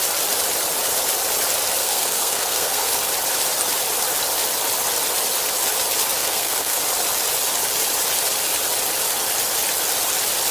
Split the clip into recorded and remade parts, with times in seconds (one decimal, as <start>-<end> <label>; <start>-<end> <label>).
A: 0.0-1.8 recorded; 1.8-2.9 remade; 2.9-6.2 recorded; 6.2-6.8 remade; 6.8-10.5 recorded